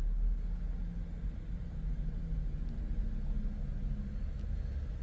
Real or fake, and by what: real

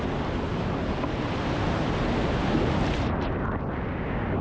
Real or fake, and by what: real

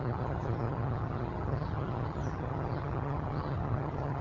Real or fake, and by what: fake, vocoder, HiFi-GAN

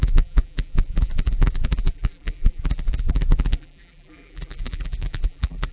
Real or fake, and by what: fake, vocoder, BigVGAN v2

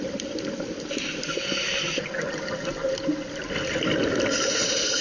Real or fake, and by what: real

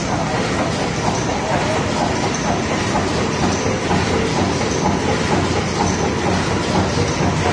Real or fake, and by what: real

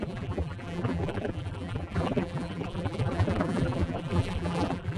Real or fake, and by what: fake, vocoder, BigVGAN v2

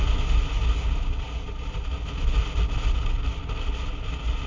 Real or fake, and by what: real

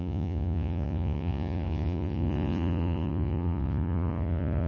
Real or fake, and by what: fake, vocoder, Vocos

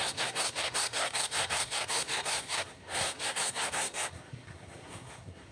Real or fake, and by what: fake, codec, SNAC